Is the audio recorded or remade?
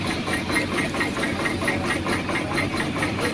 remade